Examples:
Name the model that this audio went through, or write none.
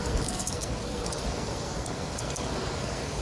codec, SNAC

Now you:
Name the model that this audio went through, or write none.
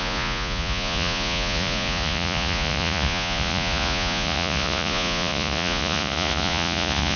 vocoder, Vocos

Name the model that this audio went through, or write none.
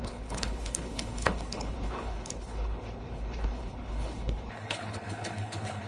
codec, HILCodec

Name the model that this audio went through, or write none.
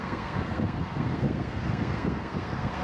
codec, SNAC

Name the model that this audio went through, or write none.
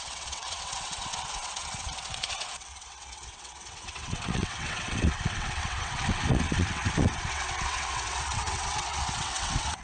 vocoder, WaveNeXt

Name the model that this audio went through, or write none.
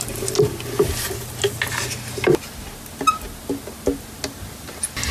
none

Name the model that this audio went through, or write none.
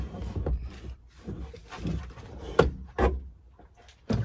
none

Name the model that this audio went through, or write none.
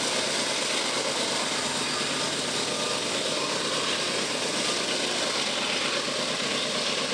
none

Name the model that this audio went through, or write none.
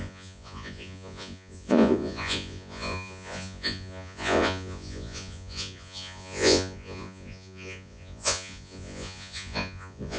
vocoder, Vocos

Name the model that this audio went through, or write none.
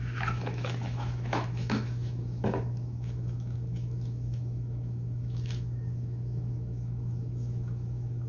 autoencoder, DAC-VAE